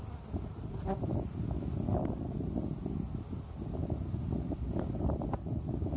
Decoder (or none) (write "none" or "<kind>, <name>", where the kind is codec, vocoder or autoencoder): none